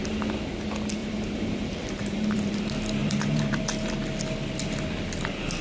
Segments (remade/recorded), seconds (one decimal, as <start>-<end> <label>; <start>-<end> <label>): 0.0-1.0 recorded; 1.0-2.6 remade; 2.6-3.0 recorded; 3.0-3.6 remade; 3.6-5.6 recorded